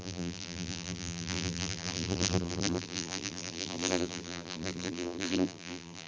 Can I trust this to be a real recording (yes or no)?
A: no